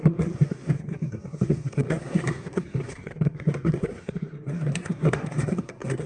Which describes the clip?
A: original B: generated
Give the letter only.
B